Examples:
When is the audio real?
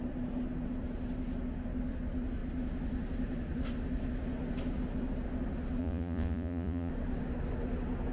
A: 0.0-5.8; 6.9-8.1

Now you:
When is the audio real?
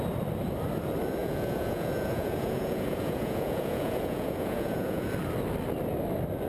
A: 0.0-1.2; 5.1-6.5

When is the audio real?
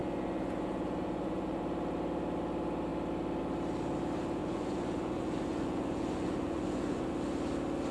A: 1.6-4.4; 7.1-7.9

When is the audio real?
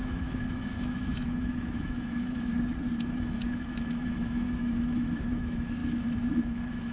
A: 2.5-3.0; 5.8-6.4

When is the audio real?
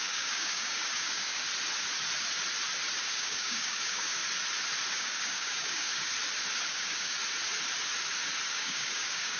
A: 1.5-3.1; 4.2-4.9; 6.1-6.7; 7.2-8.5